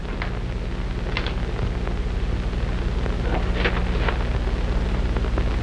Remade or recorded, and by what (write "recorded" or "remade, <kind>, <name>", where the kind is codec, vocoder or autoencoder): recorded